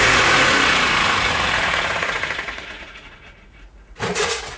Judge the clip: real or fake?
fake